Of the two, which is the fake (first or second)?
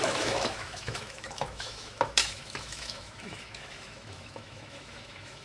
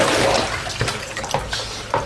first